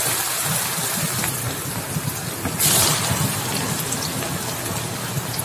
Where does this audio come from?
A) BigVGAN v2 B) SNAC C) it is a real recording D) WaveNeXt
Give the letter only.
C